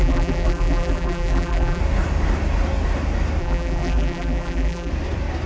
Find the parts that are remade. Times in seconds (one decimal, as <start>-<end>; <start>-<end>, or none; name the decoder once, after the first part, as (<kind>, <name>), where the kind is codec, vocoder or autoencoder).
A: 0.0-1.8 (vocoder, BigVGAN v2); 3.4-4.9